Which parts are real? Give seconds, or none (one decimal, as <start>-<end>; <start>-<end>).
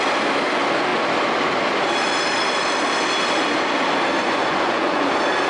0.0-4.2; 5.1-5.5